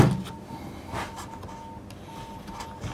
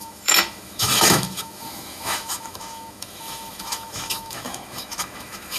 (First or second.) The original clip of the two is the first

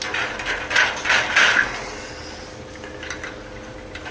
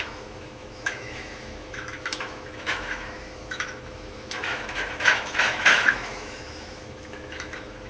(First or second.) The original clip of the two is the first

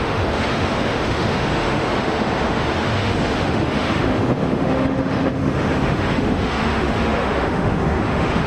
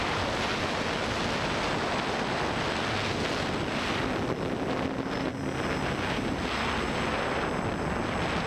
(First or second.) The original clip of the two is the second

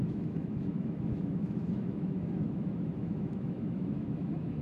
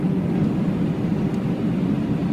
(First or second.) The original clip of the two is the second